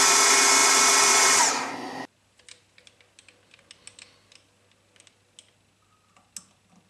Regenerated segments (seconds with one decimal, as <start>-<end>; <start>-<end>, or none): 0.6-1.5